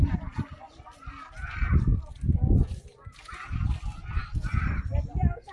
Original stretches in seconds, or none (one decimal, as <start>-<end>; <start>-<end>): 0.0-4.2; 4.8-5.5